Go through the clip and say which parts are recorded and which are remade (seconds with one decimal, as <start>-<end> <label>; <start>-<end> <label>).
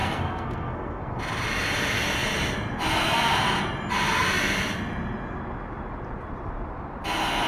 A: 0.0-1.2 remade; 1.2-7.5 recorded